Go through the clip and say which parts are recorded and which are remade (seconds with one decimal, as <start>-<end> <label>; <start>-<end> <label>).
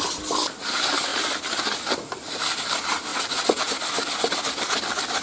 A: 0.0-3.1 recorded; 3.1-3.6 remade; 3.6-5.2 recorded